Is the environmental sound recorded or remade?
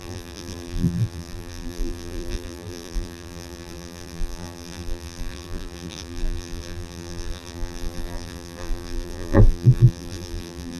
remade